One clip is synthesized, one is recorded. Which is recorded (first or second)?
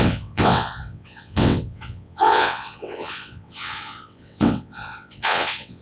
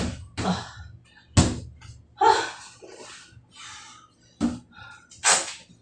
second